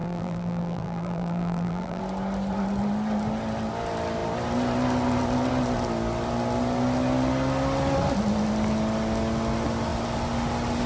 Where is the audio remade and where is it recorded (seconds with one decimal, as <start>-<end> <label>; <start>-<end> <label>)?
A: 0.0-2.0 remade; 2.0-10.9 recorded

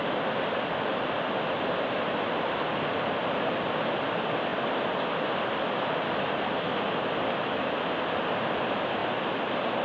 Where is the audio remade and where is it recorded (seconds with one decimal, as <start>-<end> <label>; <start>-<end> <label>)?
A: 0.0-4.5 recorded; 4.5-6.8 remade; 6.8-9.0 recorded; 9.0-9.8 remade

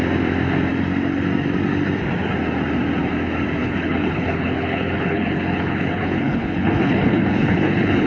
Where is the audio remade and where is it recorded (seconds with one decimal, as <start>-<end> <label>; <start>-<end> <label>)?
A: 0.0-3.6 recorded; 3.6-8.1 remade

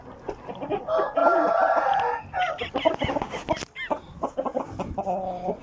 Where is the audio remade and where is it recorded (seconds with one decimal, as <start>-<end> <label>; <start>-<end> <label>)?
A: 0.0-5.6 recorded

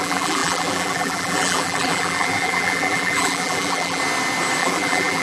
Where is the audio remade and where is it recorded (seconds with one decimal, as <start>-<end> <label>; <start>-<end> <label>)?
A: 0.0-4.0 remade; 4.0-4.6 recorded; 4.6-5.2 remade